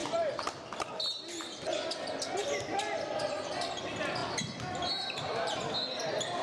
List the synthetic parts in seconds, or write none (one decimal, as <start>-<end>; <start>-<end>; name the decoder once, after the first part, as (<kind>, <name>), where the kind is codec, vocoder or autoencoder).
0.0-0.9 (vocoder, BigVGAN v2)

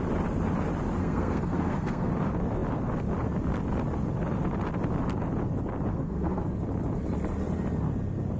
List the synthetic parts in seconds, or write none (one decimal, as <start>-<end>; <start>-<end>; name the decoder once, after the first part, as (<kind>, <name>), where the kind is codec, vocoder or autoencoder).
1.0-2.1 (codec, SNAC); 5.9-6.4

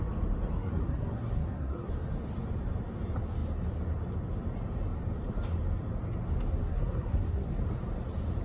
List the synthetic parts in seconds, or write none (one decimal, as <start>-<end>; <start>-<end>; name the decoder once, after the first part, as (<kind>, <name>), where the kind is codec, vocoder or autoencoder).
0.6-1.9 (codec, SNAC); 6.6-7.6

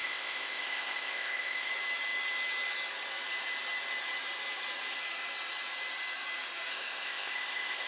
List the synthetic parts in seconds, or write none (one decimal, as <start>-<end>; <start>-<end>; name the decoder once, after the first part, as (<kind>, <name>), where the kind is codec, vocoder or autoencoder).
0.0-1.7 (codec, ZipCodec); 6.7-7.9